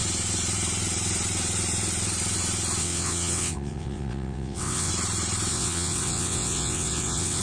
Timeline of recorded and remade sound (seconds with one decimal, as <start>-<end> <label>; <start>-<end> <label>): 0.0-2.8 recorded; 2.8-4.9 remade; 4.9-5.5 recorded; 5.5-7.4 remade